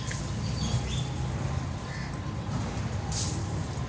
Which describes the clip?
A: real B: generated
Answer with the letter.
A